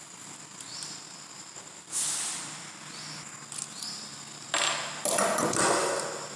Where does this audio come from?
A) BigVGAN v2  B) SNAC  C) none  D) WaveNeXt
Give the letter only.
C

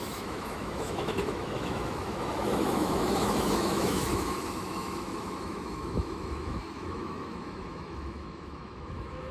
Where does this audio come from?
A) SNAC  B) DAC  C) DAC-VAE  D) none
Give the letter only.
C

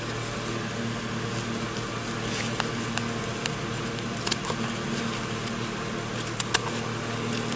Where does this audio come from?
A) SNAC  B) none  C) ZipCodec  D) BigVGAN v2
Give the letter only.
B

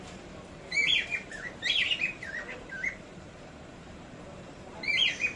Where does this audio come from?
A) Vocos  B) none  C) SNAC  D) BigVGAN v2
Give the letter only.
D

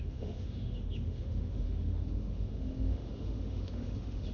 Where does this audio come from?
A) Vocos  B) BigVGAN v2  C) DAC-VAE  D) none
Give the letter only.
C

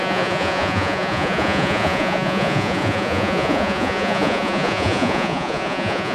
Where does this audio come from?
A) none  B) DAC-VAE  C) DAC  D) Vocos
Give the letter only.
D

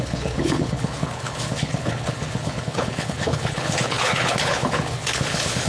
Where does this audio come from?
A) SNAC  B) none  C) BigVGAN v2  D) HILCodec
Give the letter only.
D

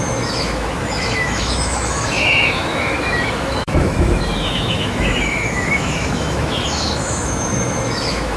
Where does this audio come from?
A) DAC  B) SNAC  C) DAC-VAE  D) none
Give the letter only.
C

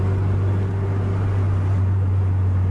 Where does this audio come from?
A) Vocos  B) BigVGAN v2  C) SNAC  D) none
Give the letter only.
D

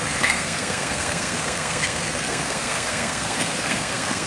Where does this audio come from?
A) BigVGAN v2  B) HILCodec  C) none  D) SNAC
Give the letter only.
D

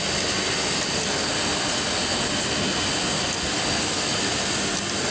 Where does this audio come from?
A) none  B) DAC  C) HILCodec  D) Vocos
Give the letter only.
A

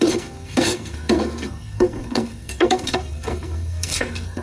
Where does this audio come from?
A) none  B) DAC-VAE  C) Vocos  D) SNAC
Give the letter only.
D